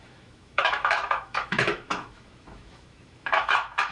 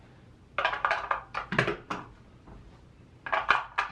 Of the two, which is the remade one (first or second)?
first